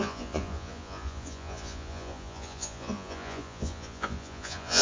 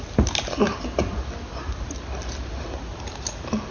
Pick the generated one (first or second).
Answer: first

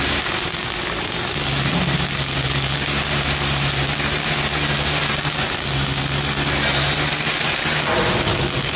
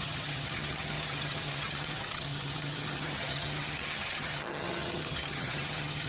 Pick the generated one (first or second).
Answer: second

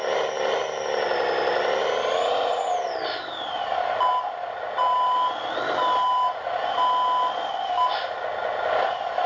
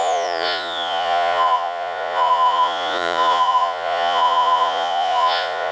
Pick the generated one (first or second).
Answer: second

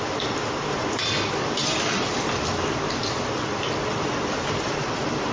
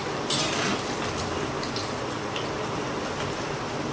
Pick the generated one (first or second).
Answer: first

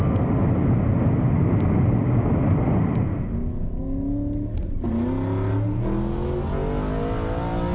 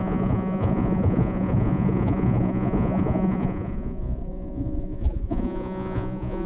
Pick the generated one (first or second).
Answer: second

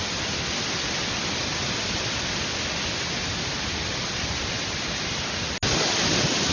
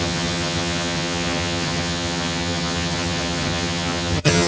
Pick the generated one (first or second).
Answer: second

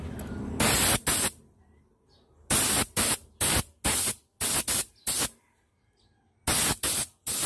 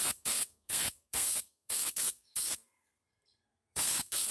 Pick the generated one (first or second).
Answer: second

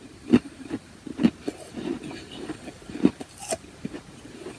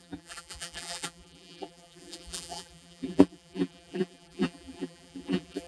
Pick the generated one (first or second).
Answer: second